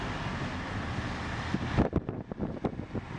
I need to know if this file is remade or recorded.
recorded